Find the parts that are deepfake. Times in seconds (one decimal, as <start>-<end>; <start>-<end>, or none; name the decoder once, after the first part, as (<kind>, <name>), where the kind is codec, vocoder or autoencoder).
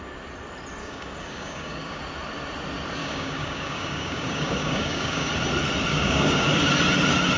0.8-2.0 (codec, DAC); 3.0-5.3; 5.9-6.7